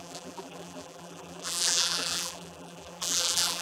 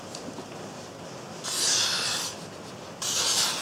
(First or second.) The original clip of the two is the second